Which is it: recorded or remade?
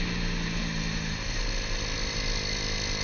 recorded